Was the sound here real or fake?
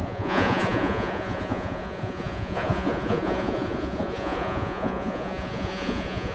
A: fake